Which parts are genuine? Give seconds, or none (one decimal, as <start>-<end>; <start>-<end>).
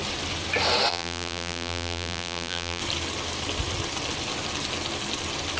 0.0-0.9; 2.8-5.6